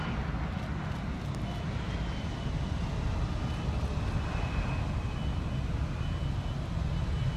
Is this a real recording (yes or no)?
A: yes